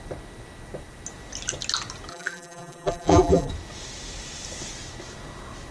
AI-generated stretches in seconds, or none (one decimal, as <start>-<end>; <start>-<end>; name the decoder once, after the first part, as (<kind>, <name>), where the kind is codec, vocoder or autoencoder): 2.1-3.5 (vocoder, BigVGAN v2)